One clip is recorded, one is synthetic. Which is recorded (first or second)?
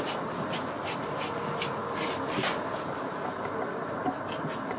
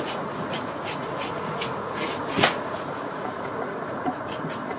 first